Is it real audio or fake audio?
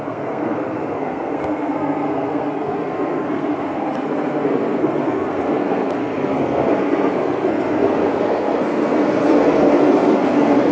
fake